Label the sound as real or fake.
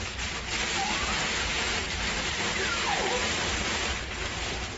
fake